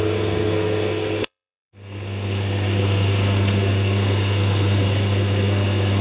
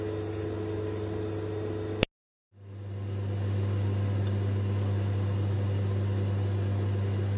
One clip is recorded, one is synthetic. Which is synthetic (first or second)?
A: first